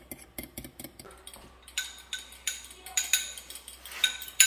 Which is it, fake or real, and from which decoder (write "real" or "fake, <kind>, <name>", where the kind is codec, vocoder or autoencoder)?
real